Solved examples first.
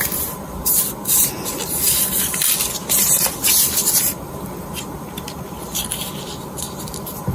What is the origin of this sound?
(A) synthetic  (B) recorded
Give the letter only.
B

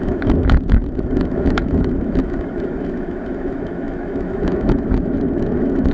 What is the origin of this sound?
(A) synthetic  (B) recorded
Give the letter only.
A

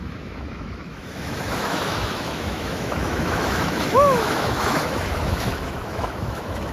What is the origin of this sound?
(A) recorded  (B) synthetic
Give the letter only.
B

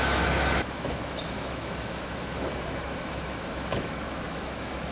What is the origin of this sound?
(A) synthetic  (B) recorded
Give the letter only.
A